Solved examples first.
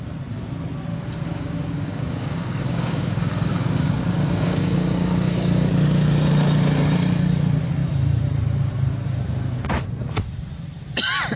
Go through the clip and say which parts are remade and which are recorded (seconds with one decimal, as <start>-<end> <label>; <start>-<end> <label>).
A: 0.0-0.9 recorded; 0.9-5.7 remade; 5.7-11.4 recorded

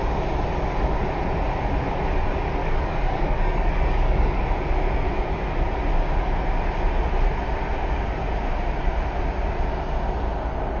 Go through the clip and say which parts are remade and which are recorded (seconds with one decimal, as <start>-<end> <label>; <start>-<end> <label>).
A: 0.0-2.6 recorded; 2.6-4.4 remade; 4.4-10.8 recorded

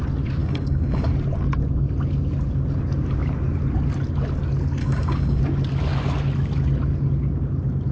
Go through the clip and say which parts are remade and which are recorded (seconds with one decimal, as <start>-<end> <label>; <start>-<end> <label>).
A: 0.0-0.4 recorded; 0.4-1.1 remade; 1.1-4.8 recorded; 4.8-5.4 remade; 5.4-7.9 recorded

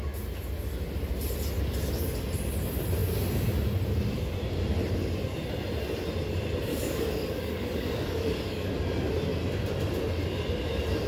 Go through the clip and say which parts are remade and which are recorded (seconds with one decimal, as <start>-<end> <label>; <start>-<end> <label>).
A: 0.0-6.7 recorded; 6.7-8.7 remade; 8.7-11.1 recorded

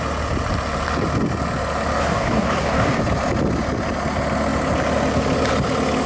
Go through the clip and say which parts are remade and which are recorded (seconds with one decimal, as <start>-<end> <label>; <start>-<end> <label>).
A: 0.0-2.0 recorded; 2.0-3.0 remade; 3.0-6.1 recorded

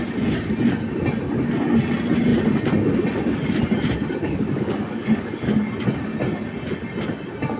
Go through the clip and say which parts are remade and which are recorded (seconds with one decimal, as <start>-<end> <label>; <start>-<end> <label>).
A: 0.0-4.2 recorded; 4.2-5.4 remade; 5.4-7.6 recorded

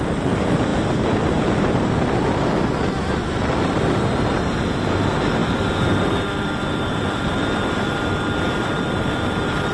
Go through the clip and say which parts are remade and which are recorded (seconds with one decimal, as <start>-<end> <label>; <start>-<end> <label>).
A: 0.0-9.7 recorded

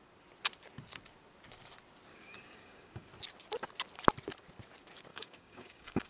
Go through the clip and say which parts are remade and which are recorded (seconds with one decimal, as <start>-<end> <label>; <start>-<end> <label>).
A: 0.0-2.1 recorded; 2.1-3.1 remade; 3.1-5.1 recorded; 5.1-6.1 remade